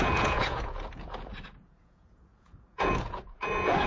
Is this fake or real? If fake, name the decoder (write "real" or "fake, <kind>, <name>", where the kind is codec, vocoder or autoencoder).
fake, vocoder, Vocos